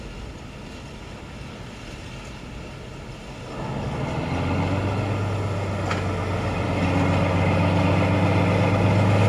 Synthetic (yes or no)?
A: no